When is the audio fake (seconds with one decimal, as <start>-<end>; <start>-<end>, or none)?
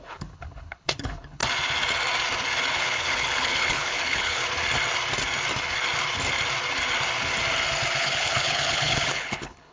0.0-1.4; 2.7-4.4; 8.0-9.7